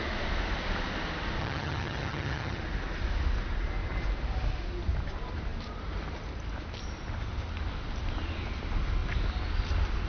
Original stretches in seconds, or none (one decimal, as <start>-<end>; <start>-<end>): 0.0-1.4; 2.6-10.1